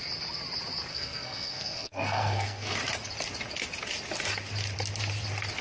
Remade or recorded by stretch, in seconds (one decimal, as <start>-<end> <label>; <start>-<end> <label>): 0.0-0.9 recorded; 0.9-2.8 remade; 2.8-5.6 recorded